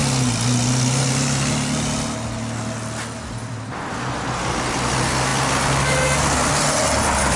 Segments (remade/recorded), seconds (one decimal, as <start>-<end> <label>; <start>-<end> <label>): 0.0-7.4 recorded